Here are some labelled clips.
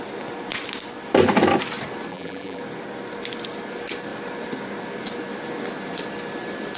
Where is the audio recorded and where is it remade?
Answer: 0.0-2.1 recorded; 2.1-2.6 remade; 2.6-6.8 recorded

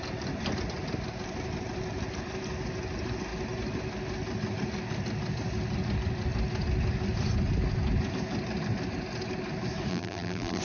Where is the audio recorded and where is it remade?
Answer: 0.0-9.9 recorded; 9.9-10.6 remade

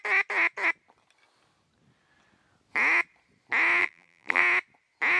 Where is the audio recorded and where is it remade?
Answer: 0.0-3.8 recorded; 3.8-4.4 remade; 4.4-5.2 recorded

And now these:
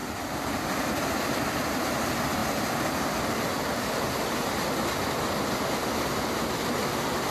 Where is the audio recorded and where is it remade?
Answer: 0.0-7.3 recorded

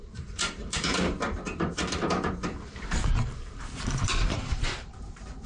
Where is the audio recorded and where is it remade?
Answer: 0.0-5.5 remade